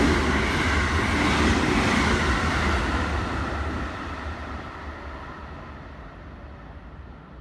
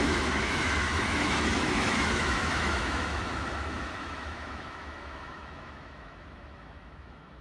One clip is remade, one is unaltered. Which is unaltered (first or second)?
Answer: first